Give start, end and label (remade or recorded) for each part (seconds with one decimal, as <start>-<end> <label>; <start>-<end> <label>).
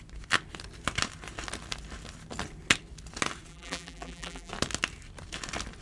0.0-3.5 recorded; 3.5-4.5 remade; 4.5-5.8 recorded